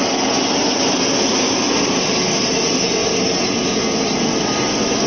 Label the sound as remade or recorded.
recorded